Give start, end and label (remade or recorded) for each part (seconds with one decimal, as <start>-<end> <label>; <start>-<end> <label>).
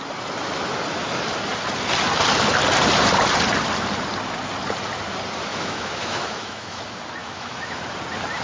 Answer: 0.0-5.5 recorded; 5.5-6.8 remade; 6.8-7.2 recorded; 7.2-7.8 remade; 7.8-8.4 recorded